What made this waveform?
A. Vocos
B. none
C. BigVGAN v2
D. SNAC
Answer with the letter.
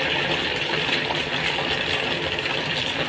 B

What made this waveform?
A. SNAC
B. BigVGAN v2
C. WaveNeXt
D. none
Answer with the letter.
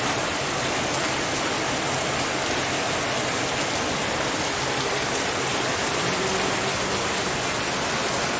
D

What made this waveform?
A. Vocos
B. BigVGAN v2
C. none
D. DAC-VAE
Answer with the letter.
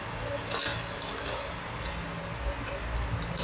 C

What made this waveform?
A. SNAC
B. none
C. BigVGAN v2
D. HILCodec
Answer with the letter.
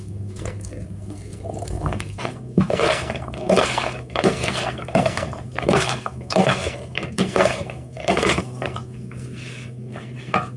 A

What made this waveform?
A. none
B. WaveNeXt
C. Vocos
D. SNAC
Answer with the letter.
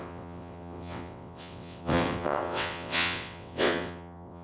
B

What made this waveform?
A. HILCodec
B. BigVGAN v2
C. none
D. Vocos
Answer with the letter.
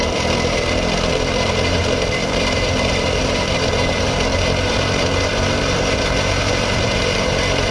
B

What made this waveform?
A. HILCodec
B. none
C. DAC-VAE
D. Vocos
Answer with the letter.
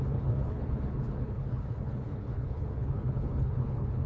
A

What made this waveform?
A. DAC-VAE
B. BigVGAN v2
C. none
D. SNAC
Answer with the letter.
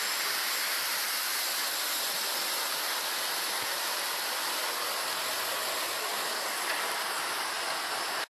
C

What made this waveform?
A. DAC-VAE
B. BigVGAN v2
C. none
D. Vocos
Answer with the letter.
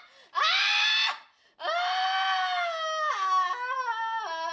C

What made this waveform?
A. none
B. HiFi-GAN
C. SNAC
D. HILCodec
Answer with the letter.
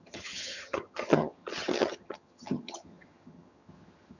B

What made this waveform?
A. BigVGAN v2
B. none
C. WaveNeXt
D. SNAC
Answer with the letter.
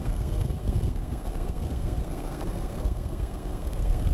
D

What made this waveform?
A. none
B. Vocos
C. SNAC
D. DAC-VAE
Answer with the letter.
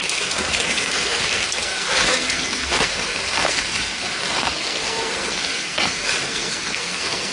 C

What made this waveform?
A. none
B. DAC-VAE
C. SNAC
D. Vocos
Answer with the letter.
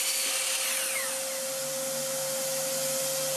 A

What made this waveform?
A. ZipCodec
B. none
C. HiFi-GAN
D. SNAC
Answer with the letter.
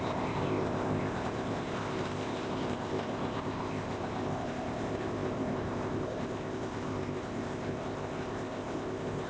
A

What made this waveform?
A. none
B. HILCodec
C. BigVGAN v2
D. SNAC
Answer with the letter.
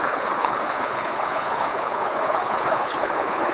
B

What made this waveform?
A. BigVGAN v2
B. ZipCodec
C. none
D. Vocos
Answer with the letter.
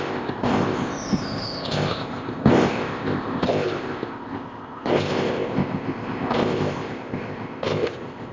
B